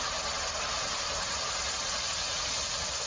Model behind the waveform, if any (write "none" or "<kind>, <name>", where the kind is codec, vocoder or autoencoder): none